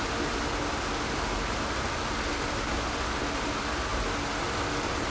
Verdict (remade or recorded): recorded